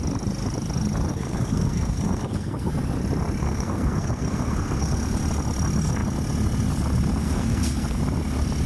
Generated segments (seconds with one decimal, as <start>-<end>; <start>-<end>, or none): 1.1-2.7; 3.4-5.0; 7.2-8.0